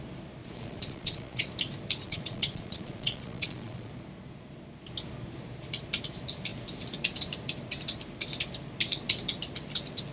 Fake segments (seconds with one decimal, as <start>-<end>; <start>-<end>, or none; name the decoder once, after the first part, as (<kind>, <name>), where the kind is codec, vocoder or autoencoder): 0.4-1.5 (vocoder, Vocos); 2.0-3.9